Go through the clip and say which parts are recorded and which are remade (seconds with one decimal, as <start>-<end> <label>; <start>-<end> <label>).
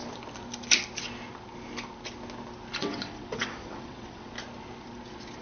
0.0-2.8 recorded; 2.8-4.3 remade; 4.3-5.4 recorded